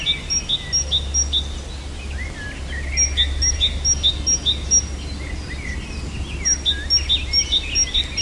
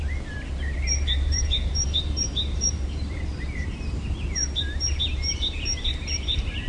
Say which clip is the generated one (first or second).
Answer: second